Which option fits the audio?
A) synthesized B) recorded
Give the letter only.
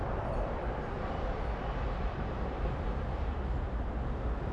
A